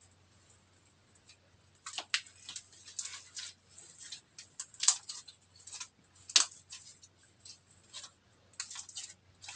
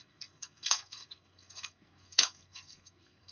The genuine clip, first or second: first